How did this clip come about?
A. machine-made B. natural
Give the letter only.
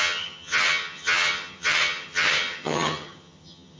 A